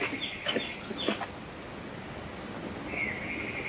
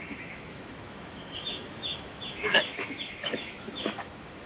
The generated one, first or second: second